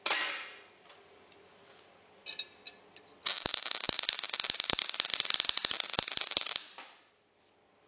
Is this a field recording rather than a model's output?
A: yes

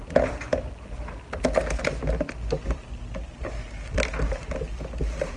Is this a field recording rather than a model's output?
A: yes